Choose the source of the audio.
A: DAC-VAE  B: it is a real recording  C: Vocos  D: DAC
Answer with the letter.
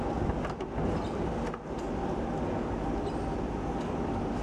B